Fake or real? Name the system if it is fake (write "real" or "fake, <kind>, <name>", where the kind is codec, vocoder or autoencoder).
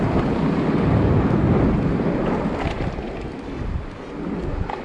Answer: real